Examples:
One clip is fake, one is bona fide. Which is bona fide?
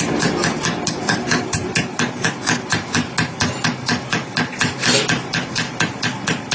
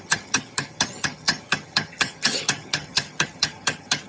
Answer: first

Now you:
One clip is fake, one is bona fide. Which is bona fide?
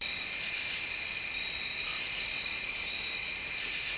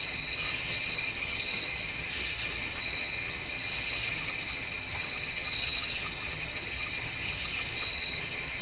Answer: first